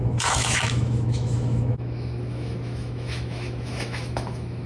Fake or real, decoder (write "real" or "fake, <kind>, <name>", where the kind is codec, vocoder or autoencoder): fake, autoencoder, DAC-VAE